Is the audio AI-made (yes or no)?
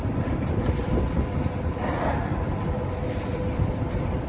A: yes